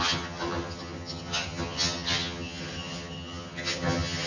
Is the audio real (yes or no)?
no